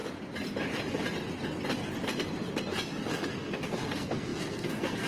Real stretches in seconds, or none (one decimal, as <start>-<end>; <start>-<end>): 0.0-3.1